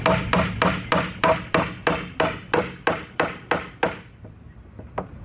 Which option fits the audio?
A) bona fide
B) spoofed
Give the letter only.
A